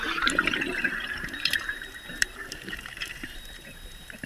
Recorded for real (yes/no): no